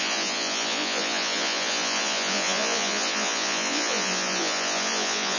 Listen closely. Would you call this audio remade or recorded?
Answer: remade